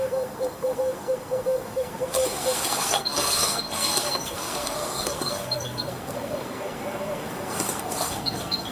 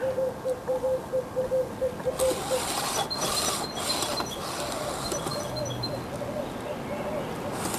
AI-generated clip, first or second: first